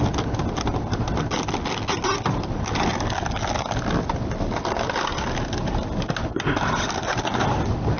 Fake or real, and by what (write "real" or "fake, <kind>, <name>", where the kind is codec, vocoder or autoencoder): real